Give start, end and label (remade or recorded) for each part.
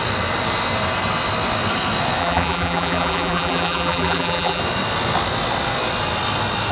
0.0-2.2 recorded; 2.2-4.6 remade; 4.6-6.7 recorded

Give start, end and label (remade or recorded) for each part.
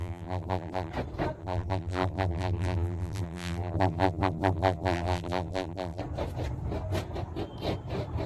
0.0-0.9 remade; 0.9-1.4 recorded; 1.4-6.0 remade; 6.0-8.3 recorded